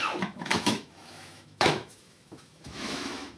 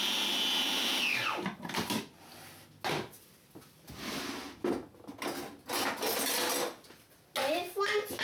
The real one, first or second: second